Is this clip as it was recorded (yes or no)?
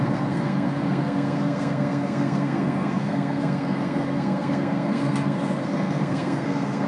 no